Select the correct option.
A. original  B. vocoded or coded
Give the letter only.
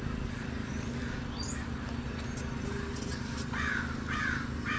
A